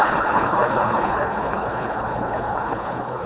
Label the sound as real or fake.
fake